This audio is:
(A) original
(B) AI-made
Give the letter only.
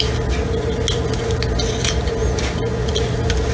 A